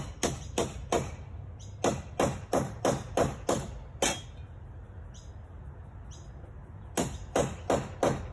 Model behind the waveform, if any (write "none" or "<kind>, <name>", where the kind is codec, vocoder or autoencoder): none